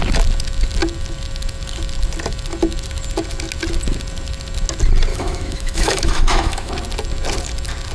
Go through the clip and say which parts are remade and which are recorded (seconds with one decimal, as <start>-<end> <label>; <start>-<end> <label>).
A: 0.0-5.1 recorded; 5.1-6.7 remade; 6.7-7.9 recorded